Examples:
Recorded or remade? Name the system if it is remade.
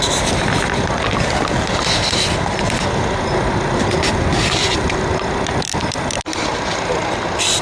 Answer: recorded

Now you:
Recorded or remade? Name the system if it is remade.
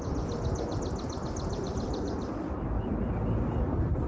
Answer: recorded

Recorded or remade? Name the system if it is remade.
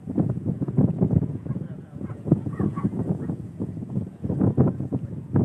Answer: remade, vocoder, Vocos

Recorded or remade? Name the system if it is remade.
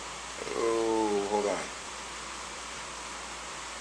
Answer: remade, vocoder, BigVGAN v2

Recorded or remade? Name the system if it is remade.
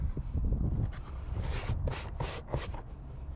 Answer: recorded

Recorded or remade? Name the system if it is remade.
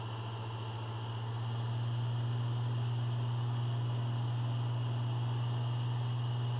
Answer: recorded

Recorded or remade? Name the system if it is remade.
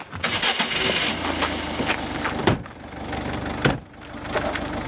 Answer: recorded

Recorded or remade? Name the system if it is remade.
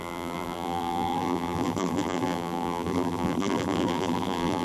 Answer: remade, vocoder, BigVGAN v2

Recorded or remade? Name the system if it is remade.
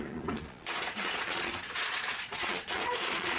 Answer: remade, vocoder, Vocos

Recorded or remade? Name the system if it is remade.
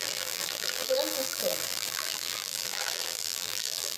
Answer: remade, vocoder, BigVGAN v2